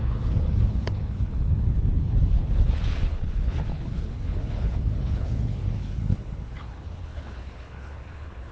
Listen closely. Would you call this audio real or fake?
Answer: fake